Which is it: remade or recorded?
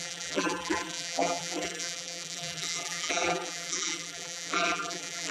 remade